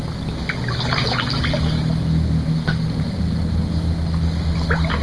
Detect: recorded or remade recorded